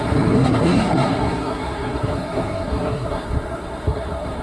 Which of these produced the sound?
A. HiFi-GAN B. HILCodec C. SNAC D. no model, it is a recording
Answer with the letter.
C